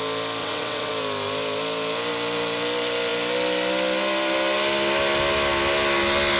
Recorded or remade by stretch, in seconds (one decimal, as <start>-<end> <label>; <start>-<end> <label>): 0.0-0.4 recorded; 0.4-0.9 remade; 0.9-6.4 recorded

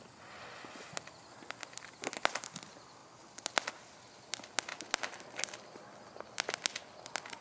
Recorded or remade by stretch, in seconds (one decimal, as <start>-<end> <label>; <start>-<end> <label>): 0.0-7.4 recorded

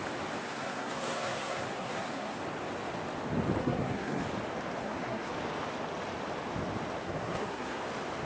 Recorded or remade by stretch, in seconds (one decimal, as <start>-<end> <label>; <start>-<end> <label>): 0.0-0.4 recorded; 0.4-2.4 remade; 2.4-3.6 recorded; 3.6-4.2 remade; 4.2-4.8 recorded; 4.8-5.3 remade; 5.3-7.0 recorded; 7.0-7.8 remade; 7.8-8.3 recorded

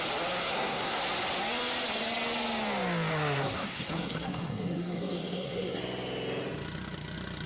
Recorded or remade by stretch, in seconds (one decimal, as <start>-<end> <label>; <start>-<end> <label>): 0.0-0.4 recorded; 0.4-1.0 remade; 1.0-3.1 recorded; 3.1-5.8 remade; 5.8-7.5 recorded

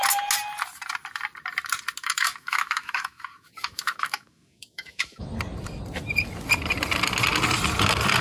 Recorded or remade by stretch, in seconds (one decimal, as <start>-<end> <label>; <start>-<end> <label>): 0.0-2.0 recorded; 2.0-5.3 remade; 5.3-8.2 recorded